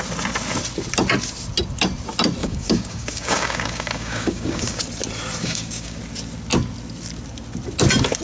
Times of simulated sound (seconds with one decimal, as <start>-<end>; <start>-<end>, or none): 2.4-4.8; 5.4-6.0